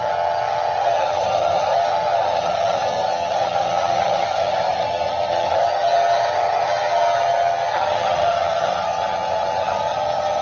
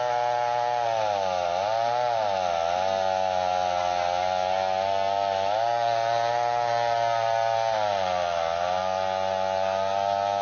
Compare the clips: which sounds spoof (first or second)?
first